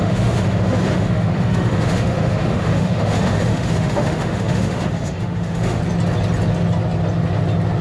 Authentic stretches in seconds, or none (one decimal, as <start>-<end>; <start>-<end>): 5.8-7.8